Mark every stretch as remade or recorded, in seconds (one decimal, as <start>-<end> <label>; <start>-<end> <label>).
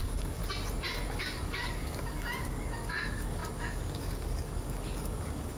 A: 0.0-0.4 remade; 0.4-1.2 recorded; 1.2-5.6 remade